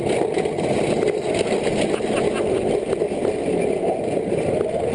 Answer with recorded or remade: recorded